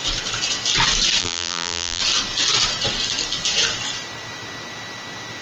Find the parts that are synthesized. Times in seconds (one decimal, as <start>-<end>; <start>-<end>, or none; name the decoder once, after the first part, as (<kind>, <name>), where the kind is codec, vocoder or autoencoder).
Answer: 1.2-2.0 (vocoder, BigVGAN v2)